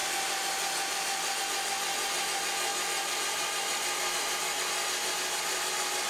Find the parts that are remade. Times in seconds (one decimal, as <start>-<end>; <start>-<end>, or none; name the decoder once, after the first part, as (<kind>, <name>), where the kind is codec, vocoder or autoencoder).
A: none